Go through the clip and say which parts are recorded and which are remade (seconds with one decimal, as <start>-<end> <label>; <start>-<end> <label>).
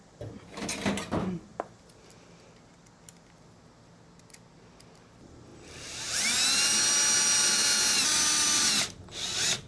0.0-9.7 recorded